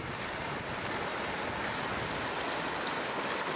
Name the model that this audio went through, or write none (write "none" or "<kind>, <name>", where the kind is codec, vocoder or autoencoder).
none